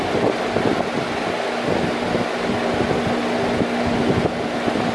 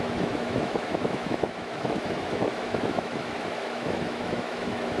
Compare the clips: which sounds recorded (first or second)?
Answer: first